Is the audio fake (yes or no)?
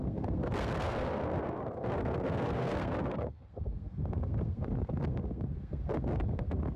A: yes